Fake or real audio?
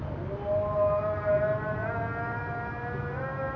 real